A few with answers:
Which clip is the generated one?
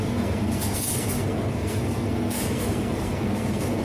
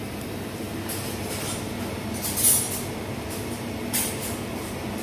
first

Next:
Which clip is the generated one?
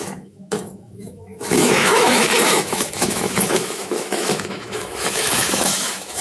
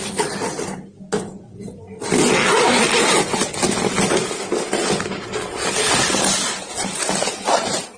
first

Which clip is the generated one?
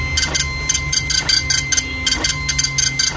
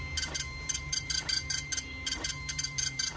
second